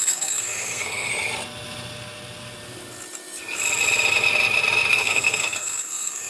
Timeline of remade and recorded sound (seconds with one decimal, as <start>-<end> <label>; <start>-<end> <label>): 0.0-1.1 remade; 1.1-4.9 recorded; 4.9-6.3 remade